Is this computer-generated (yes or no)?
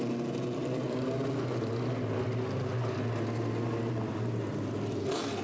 no